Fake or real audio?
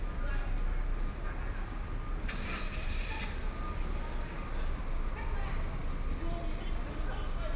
real